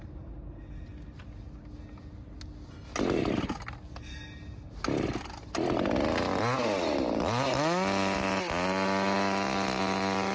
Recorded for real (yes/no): yes